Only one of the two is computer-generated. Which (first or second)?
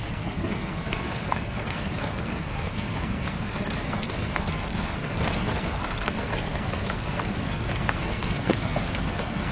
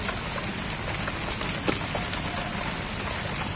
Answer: first